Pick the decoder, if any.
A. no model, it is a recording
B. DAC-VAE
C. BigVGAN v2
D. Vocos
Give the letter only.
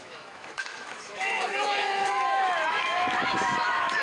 B